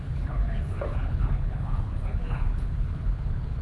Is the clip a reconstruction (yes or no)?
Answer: yes